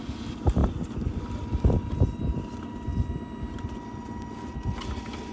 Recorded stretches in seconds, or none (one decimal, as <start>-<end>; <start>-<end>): 0.0-5.3